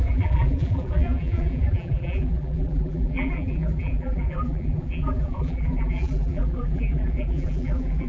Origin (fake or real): fake